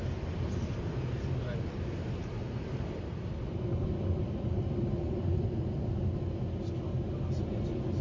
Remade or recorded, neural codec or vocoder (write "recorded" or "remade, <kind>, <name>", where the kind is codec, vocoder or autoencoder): recorded